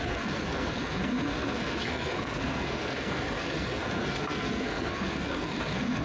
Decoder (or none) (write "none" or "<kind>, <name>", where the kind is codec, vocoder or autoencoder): codec, SNAC